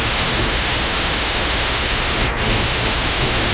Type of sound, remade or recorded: remade